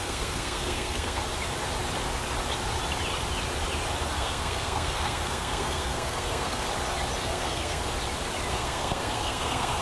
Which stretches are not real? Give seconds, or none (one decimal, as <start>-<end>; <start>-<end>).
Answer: 0.0-1.2; 4.1-6.7; 7.2-7.8; 8.5-9.8